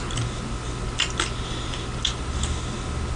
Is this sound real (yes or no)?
yes